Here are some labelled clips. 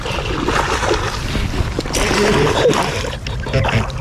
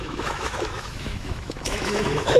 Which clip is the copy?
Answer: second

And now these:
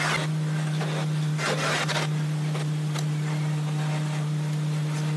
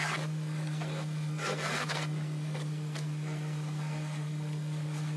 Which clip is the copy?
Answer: second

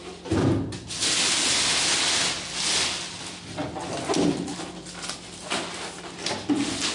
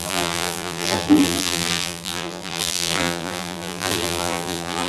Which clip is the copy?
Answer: second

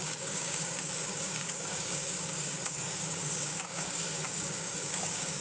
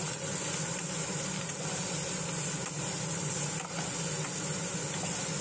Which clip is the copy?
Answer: first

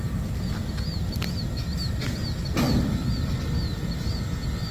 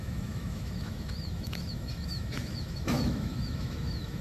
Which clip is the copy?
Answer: second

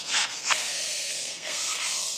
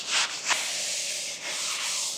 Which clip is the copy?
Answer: first